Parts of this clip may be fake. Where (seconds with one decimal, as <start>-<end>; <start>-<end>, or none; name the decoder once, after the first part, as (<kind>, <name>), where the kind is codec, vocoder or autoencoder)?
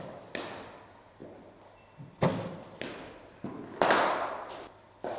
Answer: none